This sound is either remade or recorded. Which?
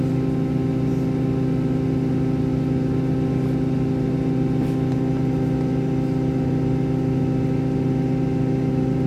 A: recorded